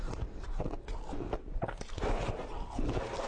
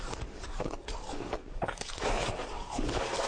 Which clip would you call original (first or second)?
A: first